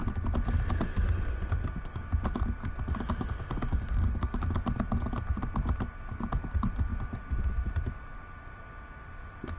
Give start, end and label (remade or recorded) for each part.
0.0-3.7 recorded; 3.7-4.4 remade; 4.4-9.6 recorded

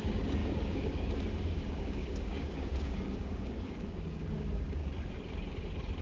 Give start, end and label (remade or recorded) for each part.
0.0-4.8 remade; 4.8-6.0 recorded

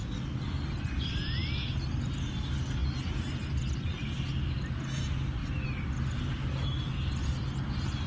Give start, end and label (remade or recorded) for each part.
0.0-8.1 recorded

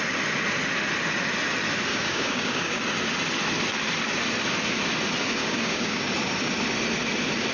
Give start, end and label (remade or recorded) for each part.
0.0-1.9 recorded; 1.9-2.8 remade; 2.8-5.4 recorded; 5.4-6.0 remade; 6.0-7.5 recorded

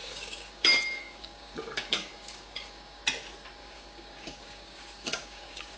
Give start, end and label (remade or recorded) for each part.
0.0-3.0 remade; 3.0-3.6 recorded; 3.6-5.8 remade

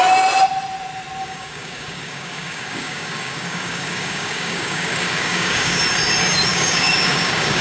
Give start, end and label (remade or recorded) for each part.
0.0-1.2 recorded; 1.2-5.8 remade; 5.8-6.5 recorded; 6.5-7.6 remade

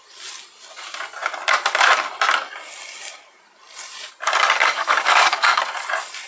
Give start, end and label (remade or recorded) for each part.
0.0-4.6 recorded; 4.6-5.6 remade; 5.6-6.3 recorded

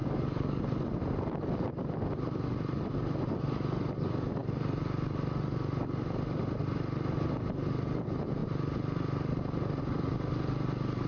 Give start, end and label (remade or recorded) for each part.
0.0-0.6 remade; 0.6-11.1 recorded